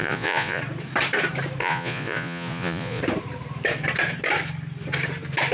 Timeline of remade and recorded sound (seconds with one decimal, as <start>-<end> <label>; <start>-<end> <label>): 0.0-0.6 remade; 0.6-1.6 recorded; 1.6-3.0 remade; 3.0-5.5 recorded